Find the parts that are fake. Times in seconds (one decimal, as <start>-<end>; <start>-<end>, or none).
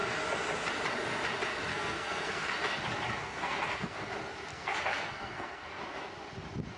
1.7-2.5; 3.2-4.1; 4.5-5.8